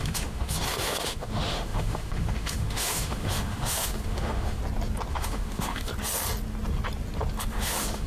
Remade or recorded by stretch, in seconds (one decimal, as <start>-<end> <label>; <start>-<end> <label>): 0.0-4.6 remade; 4.6-5.1 recorded; 5.1-5.9 remade; 5.9-7.5 recorded; 7.5-8.1 remade